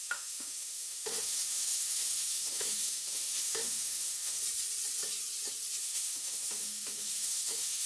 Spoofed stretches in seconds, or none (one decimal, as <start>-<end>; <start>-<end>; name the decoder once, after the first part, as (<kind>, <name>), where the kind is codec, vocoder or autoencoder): 0.0-4.4 (autoencoder, DAC-VAE); 5.8-7.9